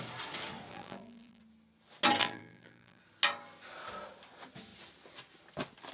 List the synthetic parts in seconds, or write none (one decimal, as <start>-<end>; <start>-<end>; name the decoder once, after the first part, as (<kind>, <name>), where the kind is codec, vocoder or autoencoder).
0.7-1.4 (vocoder, BigVGAN v2); 2.2-3.0